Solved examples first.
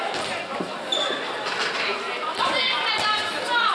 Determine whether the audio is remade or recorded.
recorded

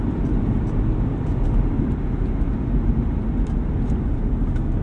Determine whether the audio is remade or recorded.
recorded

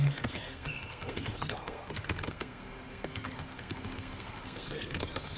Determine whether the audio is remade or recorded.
remade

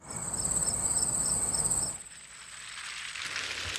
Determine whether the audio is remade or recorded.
recorded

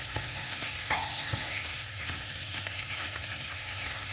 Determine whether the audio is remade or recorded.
remade